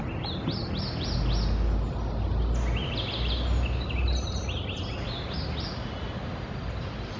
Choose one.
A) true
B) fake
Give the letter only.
A